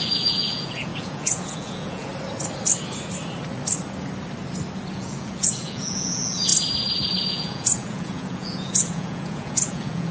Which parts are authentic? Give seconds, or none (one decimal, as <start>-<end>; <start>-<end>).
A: 2.1-4.9; 6.5-7.3